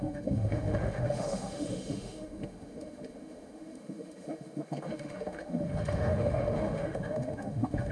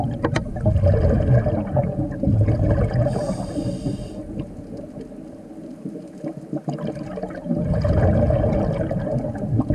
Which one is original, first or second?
second